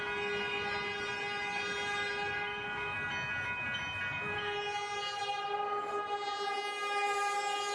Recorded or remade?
recorded